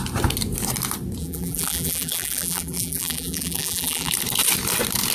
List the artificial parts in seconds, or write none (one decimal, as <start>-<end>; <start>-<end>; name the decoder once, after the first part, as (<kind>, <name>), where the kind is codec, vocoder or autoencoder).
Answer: 1.2-4.1 (vocoder, BigVGAN v2)

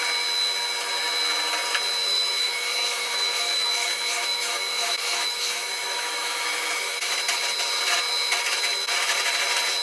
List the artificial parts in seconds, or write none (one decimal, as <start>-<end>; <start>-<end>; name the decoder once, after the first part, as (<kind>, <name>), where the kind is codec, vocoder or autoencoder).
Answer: 2.0-7.1 (autoencoder, DAC-VAE)